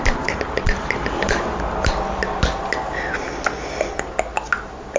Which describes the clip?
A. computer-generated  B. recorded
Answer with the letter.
B